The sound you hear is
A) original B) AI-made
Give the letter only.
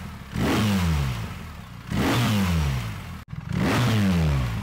A